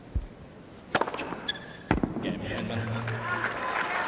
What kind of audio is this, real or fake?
real